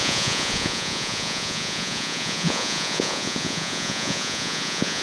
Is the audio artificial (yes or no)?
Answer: yes